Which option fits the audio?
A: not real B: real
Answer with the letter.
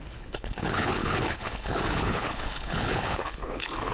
A